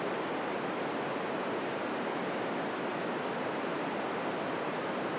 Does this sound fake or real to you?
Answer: real